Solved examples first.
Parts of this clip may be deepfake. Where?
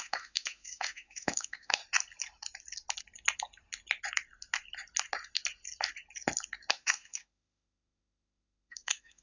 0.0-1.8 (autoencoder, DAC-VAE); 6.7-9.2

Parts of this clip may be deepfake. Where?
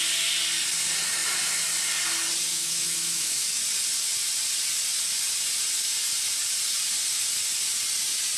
2.5-3.6 (autoencoder, DAC-VAE)